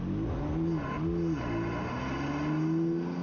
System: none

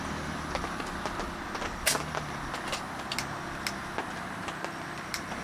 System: none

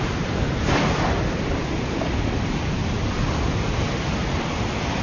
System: none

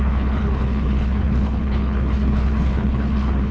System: codec, HILCodec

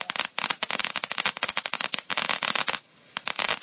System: none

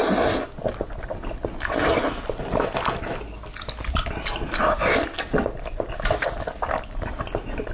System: none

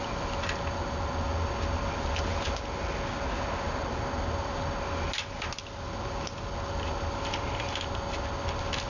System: none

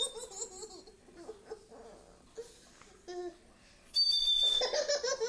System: none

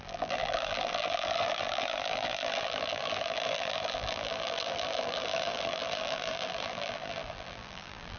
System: vocoder, BigVGAN v2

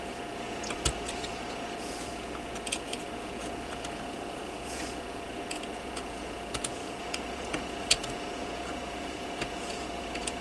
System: vocoder, Vocos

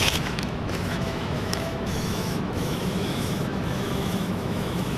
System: autoencoder, DAC-VAE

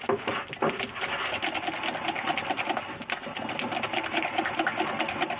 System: none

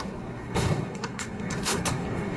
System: codec, SNAC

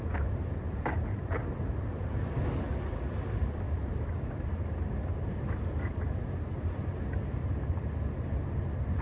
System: none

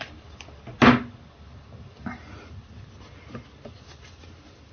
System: none